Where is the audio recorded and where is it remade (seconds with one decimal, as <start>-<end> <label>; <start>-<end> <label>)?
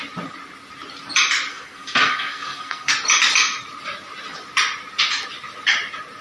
0.0-1.5 recorded; 1.5-2.9 remade; 2.9-6.2 recorded